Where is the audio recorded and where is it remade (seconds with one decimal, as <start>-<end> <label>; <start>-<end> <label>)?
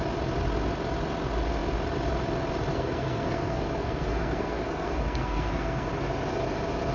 0.0-2.7 recorded; 2.7-5.9 remade; 5.9-6.9 recorded